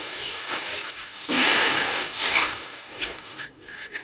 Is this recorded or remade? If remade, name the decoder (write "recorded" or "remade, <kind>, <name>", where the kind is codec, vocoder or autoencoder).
remade, codec, DAC